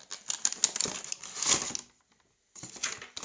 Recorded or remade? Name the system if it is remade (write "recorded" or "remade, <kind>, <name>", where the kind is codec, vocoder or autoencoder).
recorded